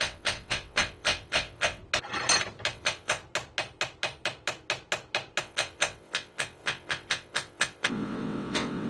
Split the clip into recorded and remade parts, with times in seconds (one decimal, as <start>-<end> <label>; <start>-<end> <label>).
0.0-1.8 remade; 1.8-2.7 recorded; 2.7-3.2 remade; 3.2-5.4 recorded; 5.4-8.9 remade